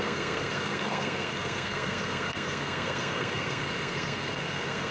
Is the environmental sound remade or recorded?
remade